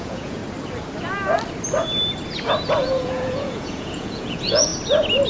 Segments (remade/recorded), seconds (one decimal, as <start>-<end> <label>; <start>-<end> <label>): 0.0-0.4 remade; 0.4-2.7 recorded; 2.7-4.7 remade; 4.7-5.3 recorded